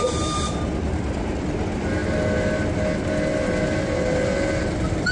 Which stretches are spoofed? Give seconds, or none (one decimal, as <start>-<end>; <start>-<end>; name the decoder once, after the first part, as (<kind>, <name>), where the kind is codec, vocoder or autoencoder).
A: none